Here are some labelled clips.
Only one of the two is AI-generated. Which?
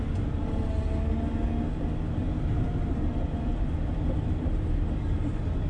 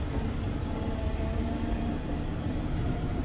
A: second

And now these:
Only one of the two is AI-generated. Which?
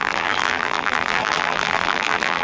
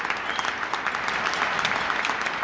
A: first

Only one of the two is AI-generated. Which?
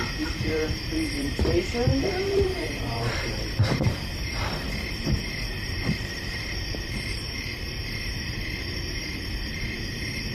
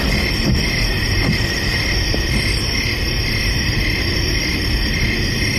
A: first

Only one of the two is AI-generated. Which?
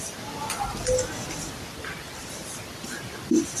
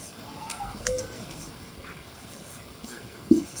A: second